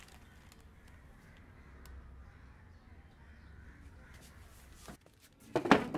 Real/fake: real